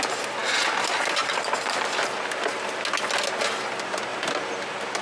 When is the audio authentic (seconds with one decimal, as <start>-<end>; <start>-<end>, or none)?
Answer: 0.0-5.0